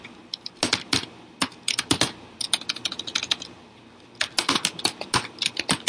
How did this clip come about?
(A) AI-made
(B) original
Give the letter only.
B